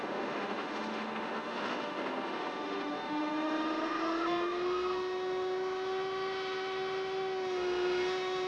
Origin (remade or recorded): remade